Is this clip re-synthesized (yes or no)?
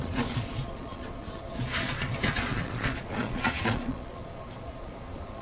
yes